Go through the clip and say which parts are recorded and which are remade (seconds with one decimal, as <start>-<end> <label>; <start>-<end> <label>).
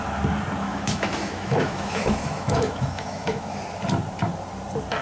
0.0-0.6 recorded; 0.6-3.6 remade; 3.6-5.0 recorded